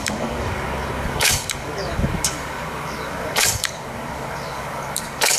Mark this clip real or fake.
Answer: fake